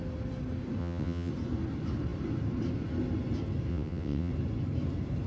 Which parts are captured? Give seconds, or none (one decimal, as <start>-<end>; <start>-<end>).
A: 0.0-0.8; 1.3-3.7; 4.3-5.3